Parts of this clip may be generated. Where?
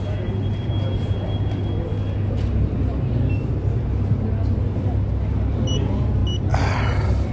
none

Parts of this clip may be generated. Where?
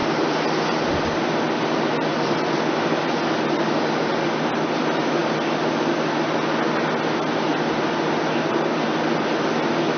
none